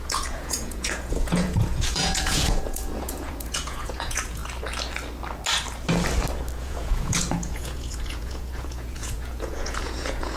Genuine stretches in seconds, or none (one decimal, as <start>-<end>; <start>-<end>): 4.4-6.6